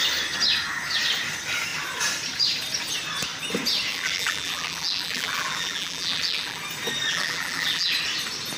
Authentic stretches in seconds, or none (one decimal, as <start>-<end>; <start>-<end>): 0.0-3.9; 6.6-7.1; 7.9-8.6